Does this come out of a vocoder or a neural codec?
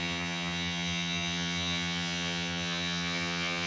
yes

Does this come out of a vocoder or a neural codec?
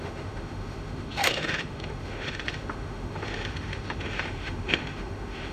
yes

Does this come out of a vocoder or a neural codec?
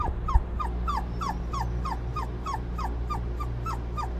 no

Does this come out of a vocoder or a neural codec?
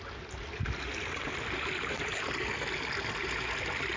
no